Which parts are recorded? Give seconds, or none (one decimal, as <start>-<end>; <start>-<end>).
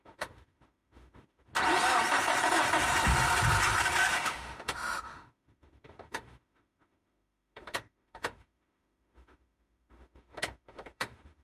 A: 1.5-4.1